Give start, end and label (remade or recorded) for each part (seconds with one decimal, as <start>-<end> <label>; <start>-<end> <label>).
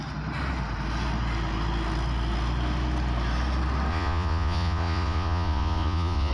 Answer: 0.0-3.9 recorded; 3.9-6.3 remade